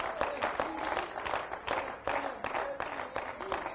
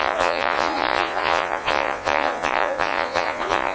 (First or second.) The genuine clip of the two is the first